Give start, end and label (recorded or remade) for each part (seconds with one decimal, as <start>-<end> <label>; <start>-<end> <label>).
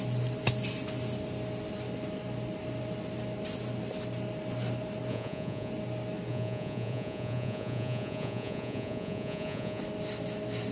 0.0-5.1 recorded; 5.1-5.7 remade; 5.7-6.3 recorded; 6.3-9.8 remade; 9.8-10.7 recorded